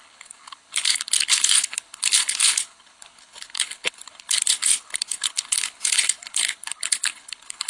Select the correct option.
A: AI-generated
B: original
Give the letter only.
A